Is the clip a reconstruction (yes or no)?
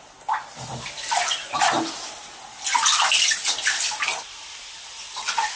no